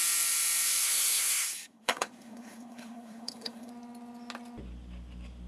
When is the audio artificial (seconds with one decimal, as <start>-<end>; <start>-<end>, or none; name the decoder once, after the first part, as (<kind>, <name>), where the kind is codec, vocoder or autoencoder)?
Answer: 0.8-3.7 (codec, SNAC)